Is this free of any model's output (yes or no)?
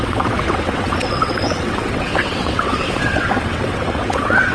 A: no